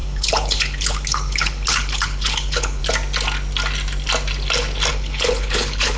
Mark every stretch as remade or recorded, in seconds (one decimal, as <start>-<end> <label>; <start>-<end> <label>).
0.0-2.8 remade; 2.8-4.9 recorded; 4.9-6.0 remade